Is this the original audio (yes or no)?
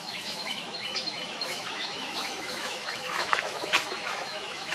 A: no